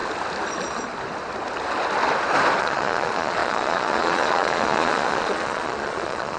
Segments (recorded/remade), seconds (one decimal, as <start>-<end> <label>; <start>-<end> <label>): 0.0-2.6 recorded; 2.6-6.4 remade